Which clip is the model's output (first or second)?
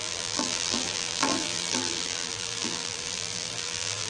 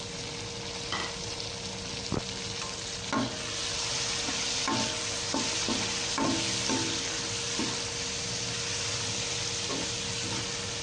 first